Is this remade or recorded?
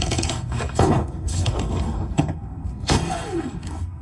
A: remade